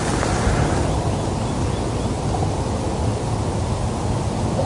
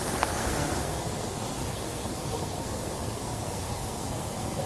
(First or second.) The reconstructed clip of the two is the second